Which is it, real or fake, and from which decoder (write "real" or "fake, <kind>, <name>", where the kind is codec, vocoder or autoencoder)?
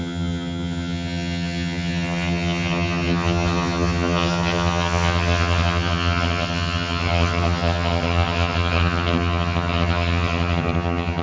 fake, vocoder, HiFi-GAN